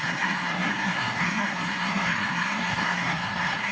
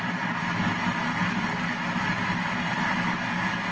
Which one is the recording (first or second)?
second